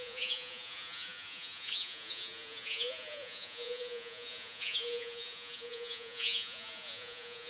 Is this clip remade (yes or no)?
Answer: yes